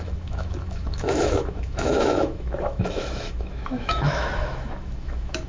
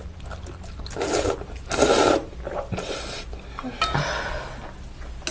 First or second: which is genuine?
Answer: second